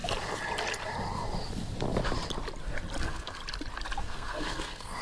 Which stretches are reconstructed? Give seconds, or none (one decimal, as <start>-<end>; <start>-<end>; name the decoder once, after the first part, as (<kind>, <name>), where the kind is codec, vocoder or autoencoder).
3.0-3.4 (codec, SNAC); 4.0-5.0